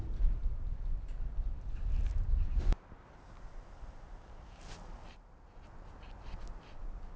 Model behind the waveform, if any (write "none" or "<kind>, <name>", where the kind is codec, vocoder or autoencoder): none